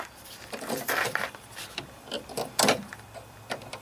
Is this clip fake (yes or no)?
yes